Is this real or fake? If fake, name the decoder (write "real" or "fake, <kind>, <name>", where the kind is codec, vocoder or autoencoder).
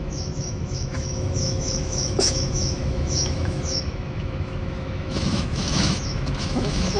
fake, autoencoder, DAC-VAE